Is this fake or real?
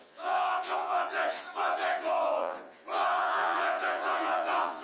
fake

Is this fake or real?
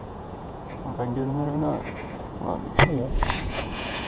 fake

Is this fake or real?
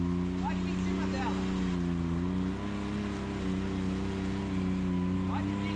real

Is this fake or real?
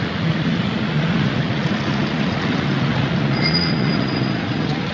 fake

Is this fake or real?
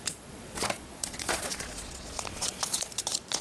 fake